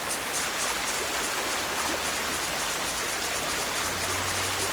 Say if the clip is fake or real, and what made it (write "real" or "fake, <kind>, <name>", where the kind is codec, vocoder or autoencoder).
real